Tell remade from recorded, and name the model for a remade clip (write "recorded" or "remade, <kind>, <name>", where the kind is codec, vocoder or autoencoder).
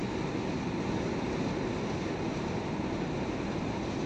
recorded